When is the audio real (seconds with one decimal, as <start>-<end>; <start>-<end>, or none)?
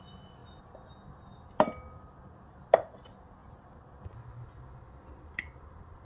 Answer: 0.0-6.0